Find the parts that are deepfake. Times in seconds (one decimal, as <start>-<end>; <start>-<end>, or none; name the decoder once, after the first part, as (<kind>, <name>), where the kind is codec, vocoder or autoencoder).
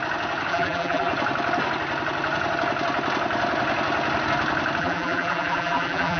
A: 0.5-1.1 (vocoder, BigVGAN v2); 4.8-6.2